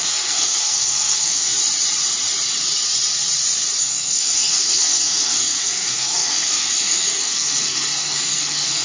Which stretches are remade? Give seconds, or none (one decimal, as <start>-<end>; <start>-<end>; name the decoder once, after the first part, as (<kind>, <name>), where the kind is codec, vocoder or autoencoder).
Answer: 0.0-1.5 (codec, SNAC); 3.8-8.8